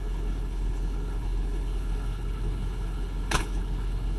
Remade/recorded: remade